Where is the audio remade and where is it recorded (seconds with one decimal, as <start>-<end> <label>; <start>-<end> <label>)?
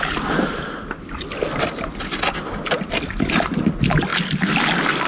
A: 0.0-5.1 recorded